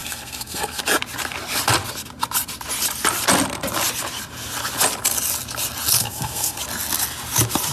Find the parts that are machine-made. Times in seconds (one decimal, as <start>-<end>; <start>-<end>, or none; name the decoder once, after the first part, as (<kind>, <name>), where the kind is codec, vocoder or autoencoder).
0.0-0.8 (codec, SNAC); 6.0-6.6